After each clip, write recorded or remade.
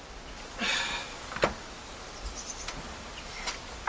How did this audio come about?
recorded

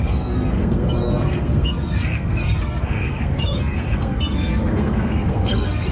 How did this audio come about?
remade